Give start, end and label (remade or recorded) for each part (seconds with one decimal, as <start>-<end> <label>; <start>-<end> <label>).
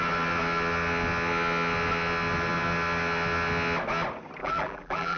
0.0-4.4 recorded; 4.4-5.2 remade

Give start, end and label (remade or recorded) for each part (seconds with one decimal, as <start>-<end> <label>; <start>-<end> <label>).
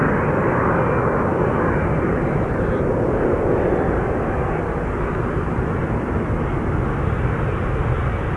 0.0-8.4 recorded